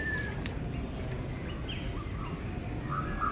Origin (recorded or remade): recorded